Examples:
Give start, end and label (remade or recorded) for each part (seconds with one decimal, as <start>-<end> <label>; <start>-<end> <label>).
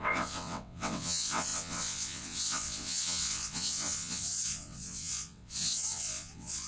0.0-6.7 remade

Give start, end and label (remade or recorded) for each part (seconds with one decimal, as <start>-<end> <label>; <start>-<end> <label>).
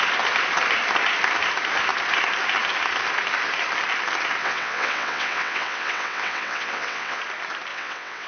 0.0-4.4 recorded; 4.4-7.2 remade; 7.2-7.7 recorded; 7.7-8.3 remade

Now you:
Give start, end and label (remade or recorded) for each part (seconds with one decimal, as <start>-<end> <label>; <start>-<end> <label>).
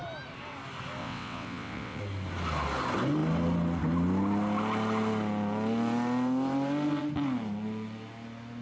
0.0-1.0 recorded; 1.0-2.0 remade; 2.0-8.6 recorded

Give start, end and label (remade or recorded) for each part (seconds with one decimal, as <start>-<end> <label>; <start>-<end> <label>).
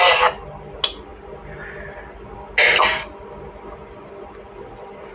0.0-5.1 recorded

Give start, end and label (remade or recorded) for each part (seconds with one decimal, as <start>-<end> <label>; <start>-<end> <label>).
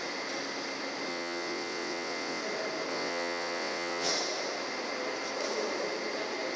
0.0-1.1 recorded; 1.1-2.4 remade; 2.4-2.9 recorded; 2.9-4.1 remade; 4.1-6.6 recorded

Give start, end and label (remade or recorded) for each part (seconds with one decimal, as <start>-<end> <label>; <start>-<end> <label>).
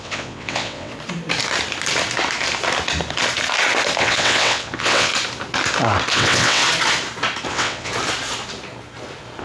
0.0-0.9 remade; 0.9-4.0 recorded; 4.0-5.1 remade; 5.1-6.1 recorded; 6.1-6.6 remade; 6.6-7.5 recorded; 7.5-7.9 remade; 7.9-9.4 recorded